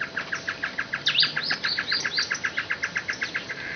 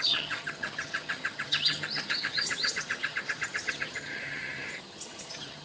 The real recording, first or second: first